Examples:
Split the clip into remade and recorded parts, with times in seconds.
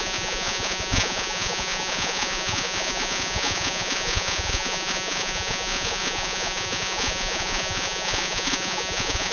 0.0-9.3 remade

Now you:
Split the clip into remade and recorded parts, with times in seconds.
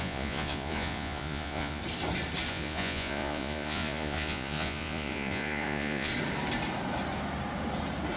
0.0-1.8 remade; 1.8-2.5 recorded; 2.5-6.1 remade; 6.1-8.2 recorded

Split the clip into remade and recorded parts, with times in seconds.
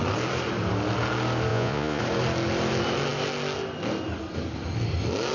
0.0-1.5 recorded; 1.5-2.0 remade; 2.0-5.3 recorded